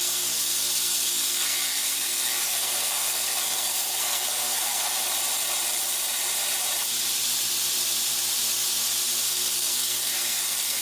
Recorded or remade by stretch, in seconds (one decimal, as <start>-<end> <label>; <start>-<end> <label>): 0.0-5.0 remade; 5.0-9.2 recorded; 9.2-10.8 remade